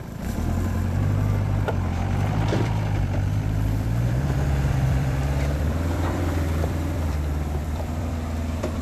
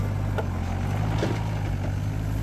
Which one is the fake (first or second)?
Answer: first